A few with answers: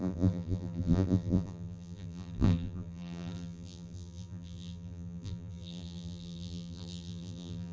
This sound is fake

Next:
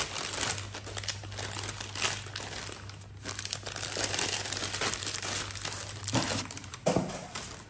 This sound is real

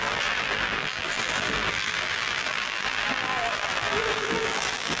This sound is fake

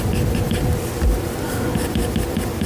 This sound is real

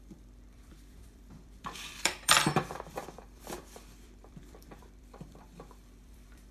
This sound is fake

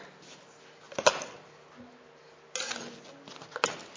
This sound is real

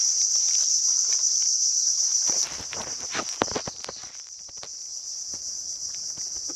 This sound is fake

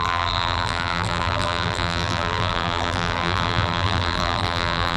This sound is fake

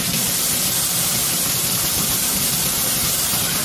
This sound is fake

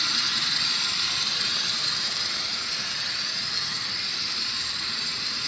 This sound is fake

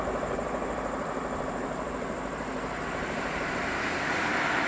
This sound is fake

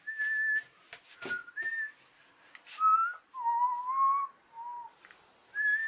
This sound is real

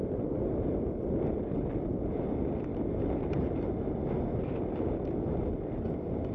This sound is real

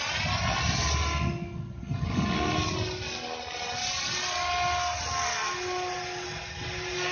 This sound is real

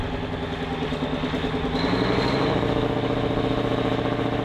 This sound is real